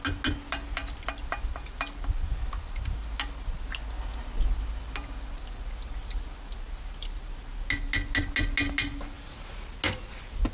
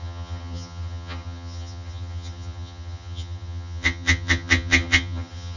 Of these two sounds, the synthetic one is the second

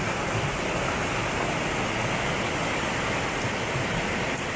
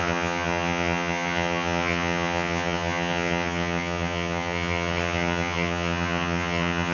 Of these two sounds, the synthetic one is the second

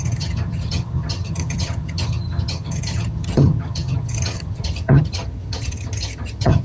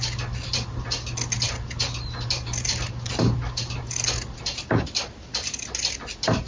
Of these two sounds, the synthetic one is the first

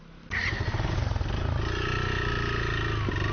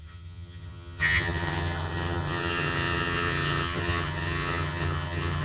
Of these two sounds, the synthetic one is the second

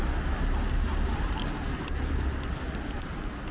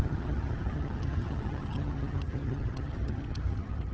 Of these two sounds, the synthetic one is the second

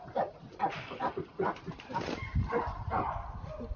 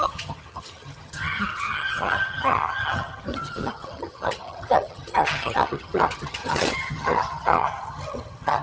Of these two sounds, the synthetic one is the second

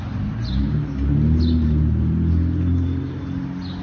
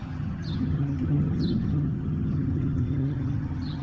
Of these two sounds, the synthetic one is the second